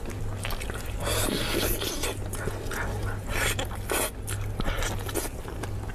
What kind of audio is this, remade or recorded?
recorded